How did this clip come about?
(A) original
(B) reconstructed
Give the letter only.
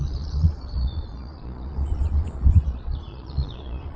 B